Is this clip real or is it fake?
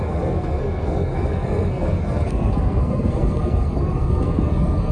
fake